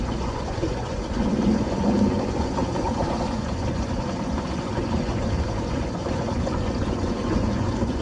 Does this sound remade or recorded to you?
remade